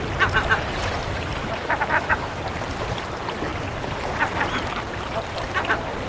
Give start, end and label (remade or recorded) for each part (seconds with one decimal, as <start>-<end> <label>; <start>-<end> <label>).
0.0-1.4 recorded; 1.4-2.4 remade; 2.4-6.1 recorded